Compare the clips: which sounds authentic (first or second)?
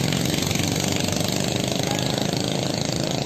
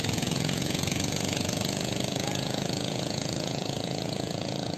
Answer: first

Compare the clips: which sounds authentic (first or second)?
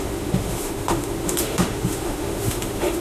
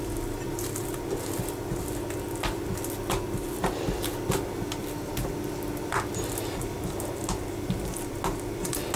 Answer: second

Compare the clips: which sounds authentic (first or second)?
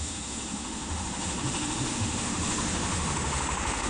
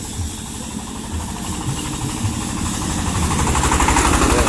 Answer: second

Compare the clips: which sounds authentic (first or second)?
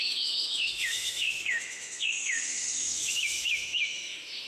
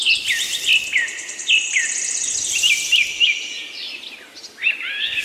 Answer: second